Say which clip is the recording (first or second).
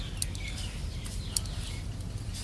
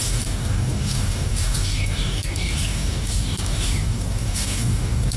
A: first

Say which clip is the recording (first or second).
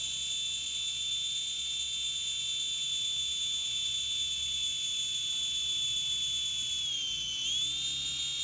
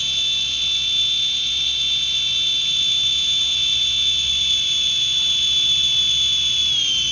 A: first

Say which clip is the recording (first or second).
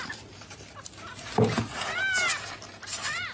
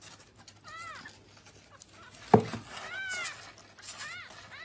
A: second